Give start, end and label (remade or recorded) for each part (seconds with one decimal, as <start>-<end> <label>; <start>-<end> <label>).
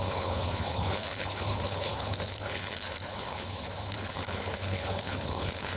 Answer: 0.0-5.8 remade